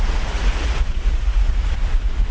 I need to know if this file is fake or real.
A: fake